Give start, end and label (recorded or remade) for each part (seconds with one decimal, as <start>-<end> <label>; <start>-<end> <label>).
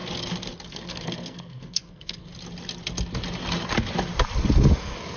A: 0.0-0.7 recorded; 0.7-2.3 remade; 2.3-4.8 recorded; 4.8-5.2 remade